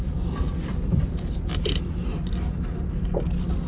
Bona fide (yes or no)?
yes